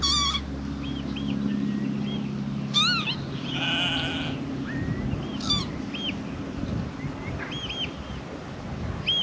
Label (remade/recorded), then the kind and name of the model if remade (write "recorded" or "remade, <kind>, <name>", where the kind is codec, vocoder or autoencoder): recorded